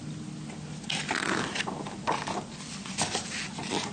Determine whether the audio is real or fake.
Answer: real